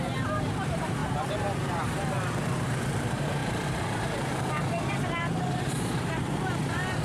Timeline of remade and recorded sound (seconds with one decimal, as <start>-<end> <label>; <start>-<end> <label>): 0.0-7.0 remade